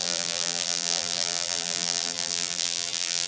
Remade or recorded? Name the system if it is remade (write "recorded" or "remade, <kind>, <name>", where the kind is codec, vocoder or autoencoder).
remade, vocoder, BigVGAN v2